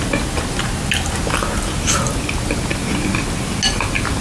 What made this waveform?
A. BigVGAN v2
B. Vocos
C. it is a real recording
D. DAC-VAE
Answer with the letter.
C